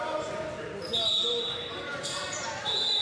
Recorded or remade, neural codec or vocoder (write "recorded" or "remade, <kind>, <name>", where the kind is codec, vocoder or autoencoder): recorded